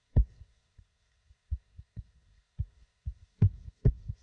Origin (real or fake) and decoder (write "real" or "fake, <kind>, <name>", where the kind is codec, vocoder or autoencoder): fake, codec, SNAC